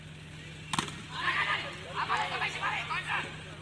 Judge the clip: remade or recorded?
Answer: recorded